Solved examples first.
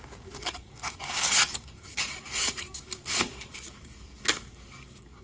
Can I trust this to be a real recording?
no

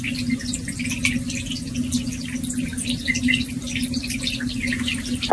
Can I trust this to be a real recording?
yes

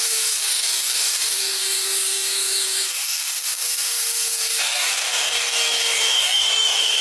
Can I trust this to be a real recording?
no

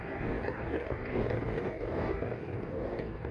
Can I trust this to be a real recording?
no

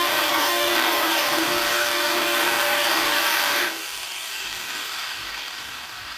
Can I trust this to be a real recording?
no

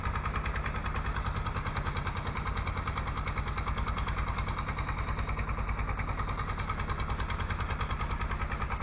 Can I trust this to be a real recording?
yes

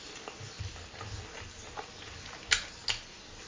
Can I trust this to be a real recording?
yes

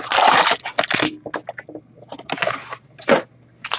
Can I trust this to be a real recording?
yes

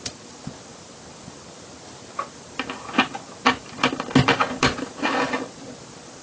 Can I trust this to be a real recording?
yes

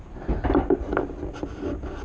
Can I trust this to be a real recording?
yes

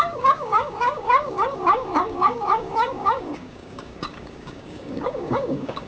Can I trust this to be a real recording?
no